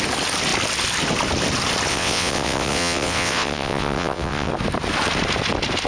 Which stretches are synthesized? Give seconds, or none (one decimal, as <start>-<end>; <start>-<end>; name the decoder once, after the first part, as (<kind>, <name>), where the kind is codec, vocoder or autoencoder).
1.9-4.5 (vocoder, WaveNeXt)